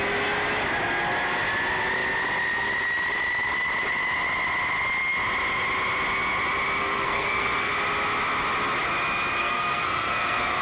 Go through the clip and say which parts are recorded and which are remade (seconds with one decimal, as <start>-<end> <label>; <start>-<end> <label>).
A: 0.0-6.8 recorded; 6.8-7.7 remade; 7.7-9.4 recorded; 9.4-10.6 remade

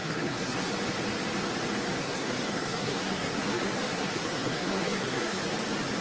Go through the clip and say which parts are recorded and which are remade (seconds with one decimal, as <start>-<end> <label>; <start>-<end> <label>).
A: 0.0-0.7 remade; 0.7-2.0 recorded; 2.0-5.4 remade; 5.4-6.0 recorded

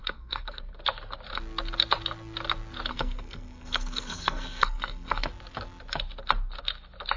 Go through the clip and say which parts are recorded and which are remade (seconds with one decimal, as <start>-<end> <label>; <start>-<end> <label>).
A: 0.0-0.7 remade; 0.7-2.9 recorded; 2.9-5.3 remade; 5.3-7.2 recorded

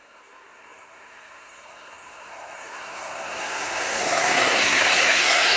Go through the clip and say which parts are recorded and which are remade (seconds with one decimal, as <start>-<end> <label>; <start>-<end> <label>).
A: 0.0-5.6 remade